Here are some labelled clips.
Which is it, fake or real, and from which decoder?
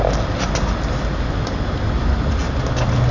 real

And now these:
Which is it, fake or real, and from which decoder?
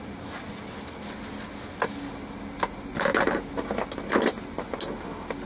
real